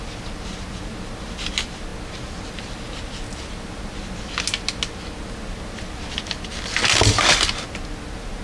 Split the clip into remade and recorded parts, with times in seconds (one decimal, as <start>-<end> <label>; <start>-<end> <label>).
0.0-8.4 recorded